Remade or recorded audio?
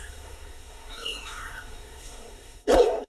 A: remade